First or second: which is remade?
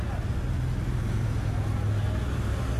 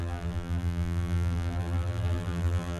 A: second